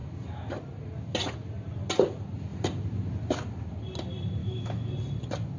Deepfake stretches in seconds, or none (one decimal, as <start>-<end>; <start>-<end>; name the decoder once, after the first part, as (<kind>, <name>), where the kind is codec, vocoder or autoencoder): 4.4-4.9 (autoencoder, DAC-VAE)